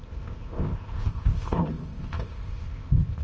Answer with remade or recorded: remade